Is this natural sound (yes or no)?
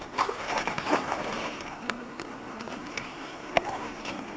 no